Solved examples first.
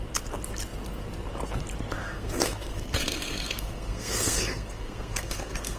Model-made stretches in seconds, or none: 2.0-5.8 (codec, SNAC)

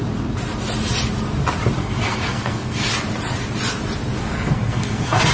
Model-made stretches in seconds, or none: 1.8-2.9 (codec, SNAC); 4.2-5.3

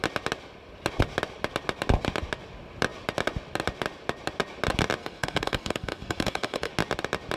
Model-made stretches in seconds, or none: 5.0-6.7 (codec, SNAC)

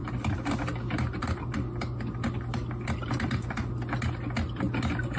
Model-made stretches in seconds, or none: none